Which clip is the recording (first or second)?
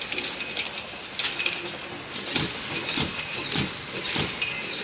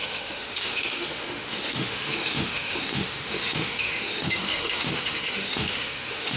first